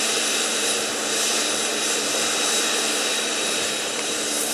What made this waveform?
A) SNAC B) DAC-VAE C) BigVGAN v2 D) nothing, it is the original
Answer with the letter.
C